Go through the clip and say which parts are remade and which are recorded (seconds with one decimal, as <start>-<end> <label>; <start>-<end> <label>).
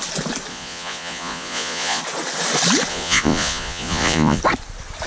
0.0-0.5 recorded; 0.5-2.0 remade; 2.0-2.9 recorded; 2.9-4.4 remade; 4.4-5.1 recorded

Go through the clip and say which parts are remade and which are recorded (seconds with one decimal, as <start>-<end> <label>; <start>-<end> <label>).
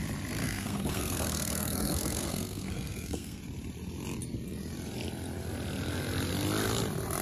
0.0-0.4 recorded; 0.4-3.4 remade; 3.4-7.2 recorded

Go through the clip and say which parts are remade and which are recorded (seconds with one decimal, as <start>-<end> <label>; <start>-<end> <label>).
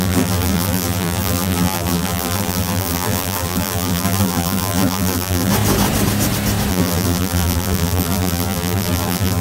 0.0-5.5 remade; 5.5-6.7 recorded; 6.7-9.4 remade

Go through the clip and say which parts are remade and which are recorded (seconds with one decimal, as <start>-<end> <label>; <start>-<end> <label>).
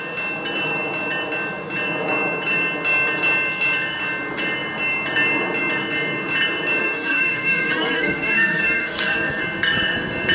0.0-6.8 recorded; 6.8-9.4 remade; 9.4-10.3 recorded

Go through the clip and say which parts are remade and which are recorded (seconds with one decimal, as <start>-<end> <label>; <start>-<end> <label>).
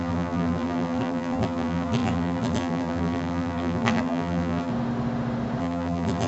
0.0-4.7 remade; 4.7-5.6 recorded; 5.6-6.3 remade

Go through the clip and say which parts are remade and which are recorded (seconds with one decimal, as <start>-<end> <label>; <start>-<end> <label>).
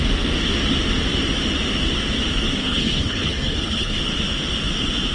0.0-2.6 recorded; 2.6-4.0 remade; 4.0-5.1 recorded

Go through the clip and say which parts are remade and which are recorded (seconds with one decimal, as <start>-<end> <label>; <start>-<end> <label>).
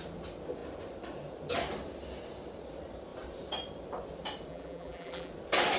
0.0-4.5 recorded; 4.5-5.3 remade; 5.3-5.8 recorded